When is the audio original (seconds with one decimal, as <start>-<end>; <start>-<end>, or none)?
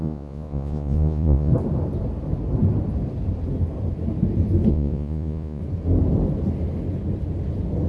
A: 1.5-4.7; 5.6-7.9